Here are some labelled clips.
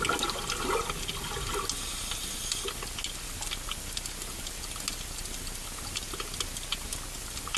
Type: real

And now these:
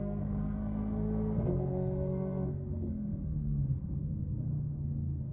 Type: fake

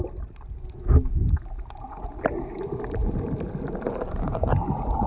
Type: real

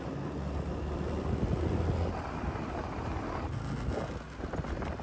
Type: real